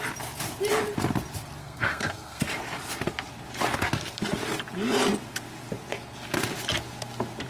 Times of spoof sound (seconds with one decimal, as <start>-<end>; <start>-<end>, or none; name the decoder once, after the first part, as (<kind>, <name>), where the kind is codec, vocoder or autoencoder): 1.6-2.4 (codec, SNAC)